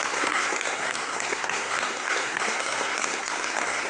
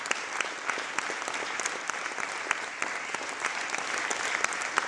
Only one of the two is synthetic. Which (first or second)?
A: first